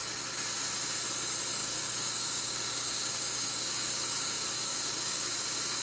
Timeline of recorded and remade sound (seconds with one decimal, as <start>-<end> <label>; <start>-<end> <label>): 0.0-1.6 recorded; 1.6-4.3 remade; 4.3-4.7 recorded; 4.7-5.3 remade; 5.3-5.8 recorded

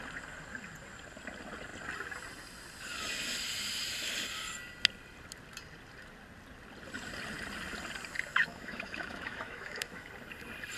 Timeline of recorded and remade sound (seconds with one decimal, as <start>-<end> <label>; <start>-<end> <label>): 0.0-8.3 recorded; 8.3-10.1 remade; 10.1-10.8 recorded

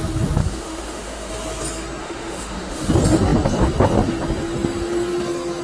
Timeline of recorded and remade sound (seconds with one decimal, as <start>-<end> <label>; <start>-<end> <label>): 0.0-0.4 recorded; 0.4-1.3 remade; 1.3-2.0 recorded; 2.0-2.9 remade; 2.9-5.6 recorded

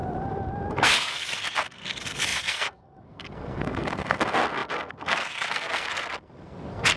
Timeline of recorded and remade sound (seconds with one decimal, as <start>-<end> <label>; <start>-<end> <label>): 0.0-0.7 recorded; 0.7-7.0 remade